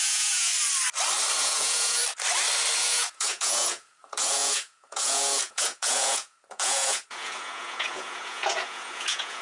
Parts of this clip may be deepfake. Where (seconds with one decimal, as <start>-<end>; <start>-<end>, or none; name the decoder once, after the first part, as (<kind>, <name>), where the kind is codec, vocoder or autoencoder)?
0.0-0.5 (vocoder, Vocos); 1.4-2.0; 2.8-9.4